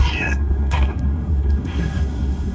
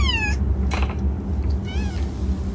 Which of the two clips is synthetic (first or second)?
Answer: first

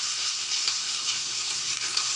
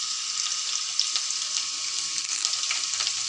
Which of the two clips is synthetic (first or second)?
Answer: first